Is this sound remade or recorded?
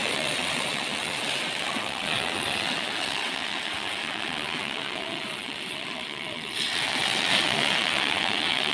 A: remade